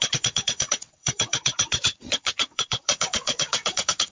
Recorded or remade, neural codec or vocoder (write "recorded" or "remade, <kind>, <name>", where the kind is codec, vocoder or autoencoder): remade, vocoder, WaveNeXt